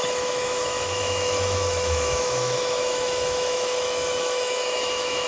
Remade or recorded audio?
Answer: remade